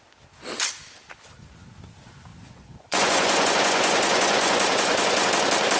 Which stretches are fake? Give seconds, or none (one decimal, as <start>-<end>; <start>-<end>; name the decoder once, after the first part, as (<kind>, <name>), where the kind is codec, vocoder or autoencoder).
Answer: 2.3-5.3 (vocoder, Vocos)